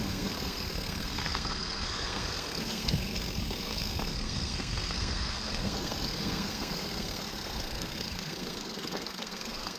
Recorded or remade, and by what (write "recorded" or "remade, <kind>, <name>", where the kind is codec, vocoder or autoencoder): remade, codec, SNAC